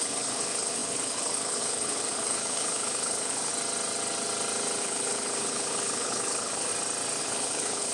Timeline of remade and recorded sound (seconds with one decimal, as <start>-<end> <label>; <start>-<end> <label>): 0.0-3.5 remade; 3.5-4.8 recorded; 4.8-6.7 remade; 6.7-7.2 recorded; 7.2-7.9 remade